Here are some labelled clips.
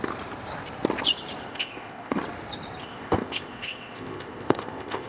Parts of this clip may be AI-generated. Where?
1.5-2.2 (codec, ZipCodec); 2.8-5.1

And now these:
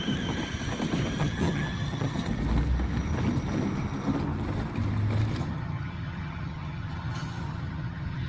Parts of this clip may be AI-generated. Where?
1.2-2.3 (vocoder, HiFi-GAN); 5.4-8.3

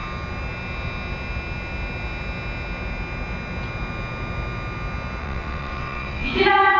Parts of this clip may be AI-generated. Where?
5.2-6.3 (vocoder, WaveNeXt)

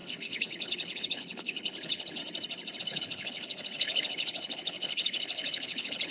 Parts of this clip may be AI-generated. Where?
0.0-2.2 (codec, HILCodec); 2.8-6.1

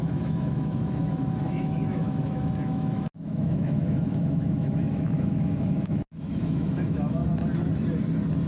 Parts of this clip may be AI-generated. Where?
0.0-7.2 (autoencoder, DAC-VAE)

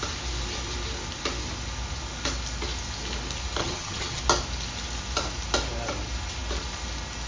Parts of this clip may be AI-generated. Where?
3.6-4.2 (vocoder, HiFi-GAN)

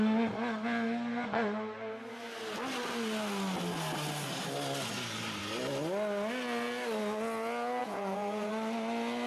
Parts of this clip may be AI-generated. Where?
7.8-8.5 (vocoder, Vocos)

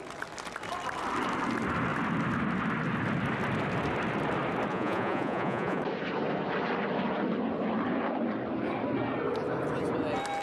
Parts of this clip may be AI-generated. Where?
4.7-5.8 (vocoder, Vocos)